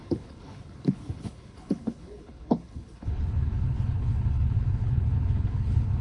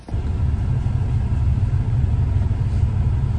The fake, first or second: first